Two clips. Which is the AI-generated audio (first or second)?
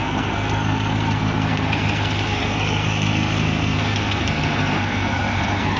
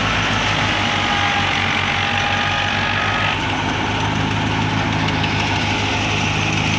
first